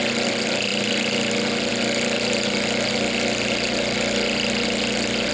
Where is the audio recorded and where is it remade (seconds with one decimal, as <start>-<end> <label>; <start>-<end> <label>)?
0.0-5.3 recorded